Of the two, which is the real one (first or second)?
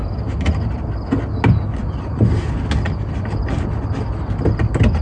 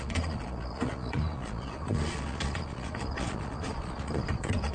first